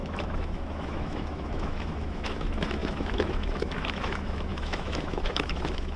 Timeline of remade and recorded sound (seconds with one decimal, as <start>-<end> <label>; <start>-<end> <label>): 0.0-6.0 remade